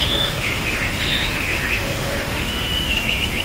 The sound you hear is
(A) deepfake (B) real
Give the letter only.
A